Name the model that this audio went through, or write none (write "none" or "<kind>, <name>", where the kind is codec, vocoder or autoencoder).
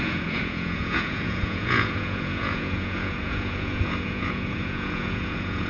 vocoder, Vocos